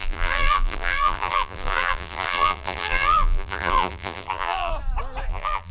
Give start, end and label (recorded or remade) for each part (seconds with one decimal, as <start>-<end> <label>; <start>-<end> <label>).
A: 0.0-4.7 remade; 4.7-5.3 recorded; 5.3-5.7 remade